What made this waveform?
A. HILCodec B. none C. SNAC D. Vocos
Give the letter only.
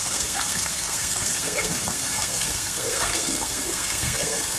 C